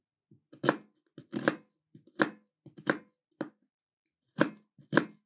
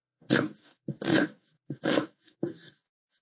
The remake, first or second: second